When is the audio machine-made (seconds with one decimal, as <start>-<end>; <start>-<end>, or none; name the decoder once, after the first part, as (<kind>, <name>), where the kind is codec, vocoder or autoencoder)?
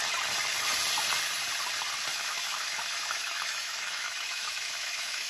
2.1-5.3 (autoencoder, DAC-VAE)